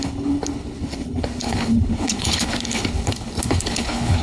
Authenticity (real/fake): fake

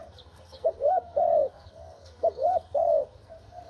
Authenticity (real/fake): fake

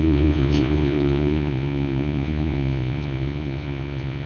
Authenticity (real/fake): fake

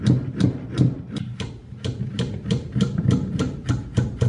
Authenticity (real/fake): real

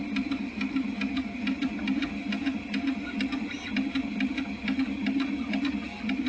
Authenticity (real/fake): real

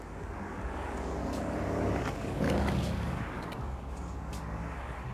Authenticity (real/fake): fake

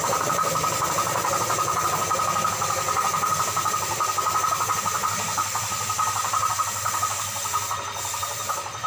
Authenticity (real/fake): real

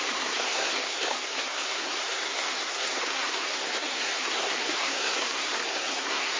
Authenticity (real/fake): fake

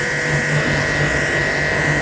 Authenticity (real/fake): real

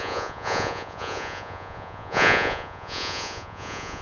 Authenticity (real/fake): fake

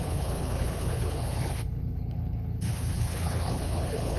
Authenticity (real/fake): fake